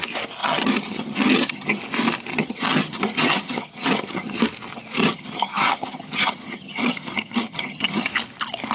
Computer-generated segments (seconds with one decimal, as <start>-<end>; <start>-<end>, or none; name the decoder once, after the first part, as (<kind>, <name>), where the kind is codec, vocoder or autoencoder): 0.4-1.8 (vocoder, HiFi-GAN); 2.3-4.4; 5.0-8.1

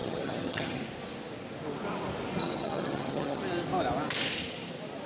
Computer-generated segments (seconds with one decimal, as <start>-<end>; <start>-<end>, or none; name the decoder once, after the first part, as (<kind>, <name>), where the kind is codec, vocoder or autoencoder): 0.0-0.8 (vocoder, HiFi-GAN); 2.4-3.4